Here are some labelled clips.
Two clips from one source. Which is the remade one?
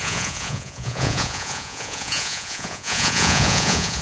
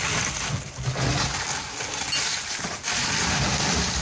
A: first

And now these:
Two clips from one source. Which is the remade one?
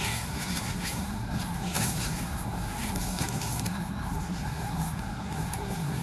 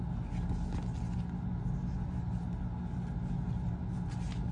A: first